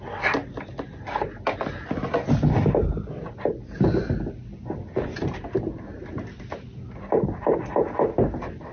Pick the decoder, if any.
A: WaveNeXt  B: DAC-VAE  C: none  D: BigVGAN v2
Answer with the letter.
C